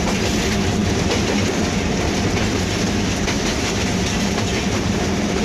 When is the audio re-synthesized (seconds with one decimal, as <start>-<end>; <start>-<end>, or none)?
3.5-5.4